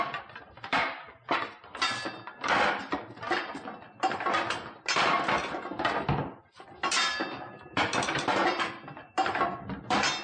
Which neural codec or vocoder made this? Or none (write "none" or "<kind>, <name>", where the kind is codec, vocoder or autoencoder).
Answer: none